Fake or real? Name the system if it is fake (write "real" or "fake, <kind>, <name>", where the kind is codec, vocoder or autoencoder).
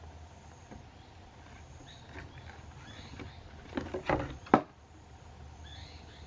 real